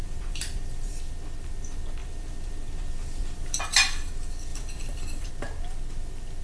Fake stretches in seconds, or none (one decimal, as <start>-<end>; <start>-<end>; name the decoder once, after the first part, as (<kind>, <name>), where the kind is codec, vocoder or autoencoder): 0.0-0.9 (vocoder, BigVGAN v2); 2.0-3.6; 4.5-5.3